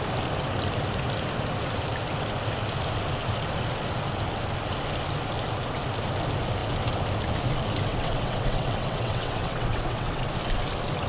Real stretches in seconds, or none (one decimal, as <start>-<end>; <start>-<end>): 0.0-7.9; 10.3-11.1